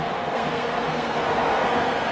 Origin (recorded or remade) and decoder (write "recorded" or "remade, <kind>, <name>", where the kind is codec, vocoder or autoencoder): remade, codec, SNAC